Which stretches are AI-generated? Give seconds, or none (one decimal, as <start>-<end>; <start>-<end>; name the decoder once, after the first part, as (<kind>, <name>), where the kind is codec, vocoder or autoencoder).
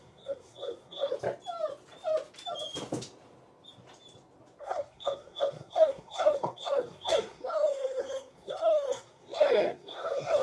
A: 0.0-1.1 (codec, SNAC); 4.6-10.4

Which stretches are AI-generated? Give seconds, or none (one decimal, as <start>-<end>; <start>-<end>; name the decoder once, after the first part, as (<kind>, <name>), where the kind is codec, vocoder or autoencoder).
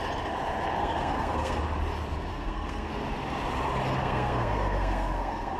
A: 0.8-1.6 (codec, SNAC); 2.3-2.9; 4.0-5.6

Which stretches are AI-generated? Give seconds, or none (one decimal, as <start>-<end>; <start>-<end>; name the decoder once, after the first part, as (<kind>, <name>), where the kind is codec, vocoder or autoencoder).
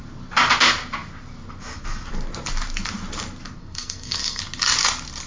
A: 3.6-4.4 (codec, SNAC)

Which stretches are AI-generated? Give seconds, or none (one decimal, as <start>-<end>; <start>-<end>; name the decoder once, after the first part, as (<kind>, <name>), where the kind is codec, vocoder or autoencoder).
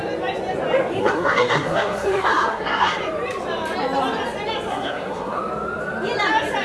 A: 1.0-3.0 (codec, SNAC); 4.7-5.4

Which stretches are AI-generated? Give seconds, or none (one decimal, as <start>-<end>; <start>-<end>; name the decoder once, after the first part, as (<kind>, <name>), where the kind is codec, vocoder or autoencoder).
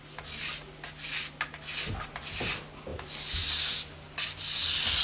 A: none